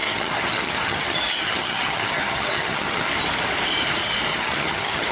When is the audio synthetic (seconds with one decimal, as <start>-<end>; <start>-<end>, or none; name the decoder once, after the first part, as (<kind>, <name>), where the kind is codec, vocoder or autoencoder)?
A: 0.0-3.1 (vocoder, HiFi-GAN); 4.3-5.1